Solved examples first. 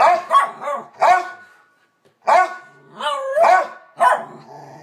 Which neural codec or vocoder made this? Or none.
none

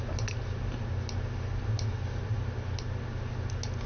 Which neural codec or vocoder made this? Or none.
none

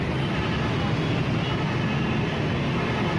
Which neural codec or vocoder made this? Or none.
none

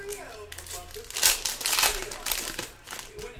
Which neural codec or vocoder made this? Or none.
none